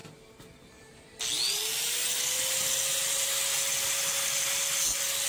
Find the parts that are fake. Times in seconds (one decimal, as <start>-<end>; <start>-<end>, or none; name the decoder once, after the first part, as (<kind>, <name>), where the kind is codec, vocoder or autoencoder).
none